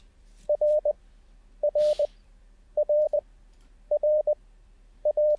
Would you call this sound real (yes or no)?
no